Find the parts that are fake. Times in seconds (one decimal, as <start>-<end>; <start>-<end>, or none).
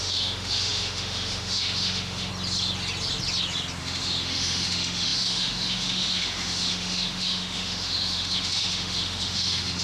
0.0-2.3; 3.8-9.8